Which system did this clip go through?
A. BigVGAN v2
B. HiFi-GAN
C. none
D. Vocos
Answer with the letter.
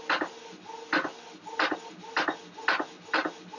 C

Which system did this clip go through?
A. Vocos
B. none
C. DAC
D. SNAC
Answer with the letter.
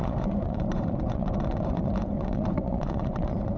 A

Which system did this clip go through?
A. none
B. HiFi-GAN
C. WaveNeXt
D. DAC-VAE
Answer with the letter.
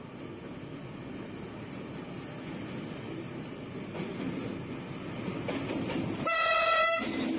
A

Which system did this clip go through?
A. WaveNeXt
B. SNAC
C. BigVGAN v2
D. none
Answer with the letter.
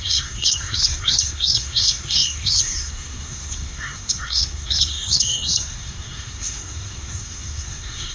B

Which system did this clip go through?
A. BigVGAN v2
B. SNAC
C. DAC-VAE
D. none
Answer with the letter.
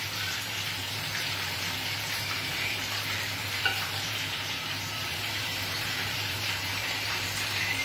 A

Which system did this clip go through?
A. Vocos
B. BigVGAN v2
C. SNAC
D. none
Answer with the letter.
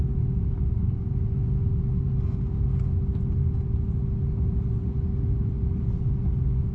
D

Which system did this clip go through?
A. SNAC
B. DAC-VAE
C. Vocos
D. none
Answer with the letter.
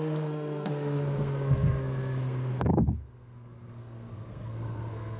A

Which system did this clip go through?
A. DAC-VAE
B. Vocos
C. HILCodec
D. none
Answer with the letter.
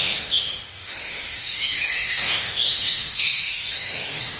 A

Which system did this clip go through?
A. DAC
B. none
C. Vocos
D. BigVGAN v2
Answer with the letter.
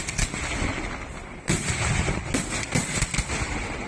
B